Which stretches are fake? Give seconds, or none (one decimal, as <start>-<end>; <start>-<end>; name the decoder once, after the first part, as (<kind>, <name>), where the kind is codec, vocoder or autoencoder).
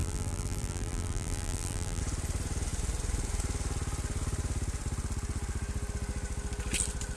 0.0-2.0 (vocoder, BigVGAN v2)